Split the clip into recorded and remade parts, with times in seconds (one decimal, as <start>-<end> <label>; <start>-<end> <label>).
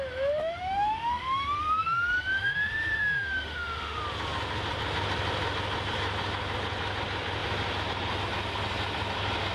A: 0.0-0.4 recorded; 0.4-4.0 remade; 4.0-9.5 recorded